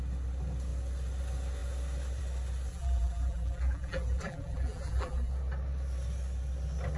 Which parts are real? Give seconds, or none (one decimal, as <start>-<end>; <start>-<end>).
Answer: 0.0-2.7; 5.3-7.0